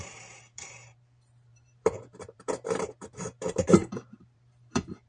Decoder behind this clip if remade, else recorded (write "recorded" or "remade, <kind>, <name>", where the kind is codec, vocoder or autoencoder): remade, vocoder, BigVGAN v2